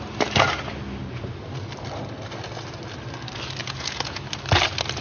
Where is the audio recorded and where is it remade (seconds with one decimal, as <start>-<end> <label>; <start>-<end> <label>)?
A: 0.0-3.6 recorded; 3.6-4.2 remade; 4.2-5.0 recorded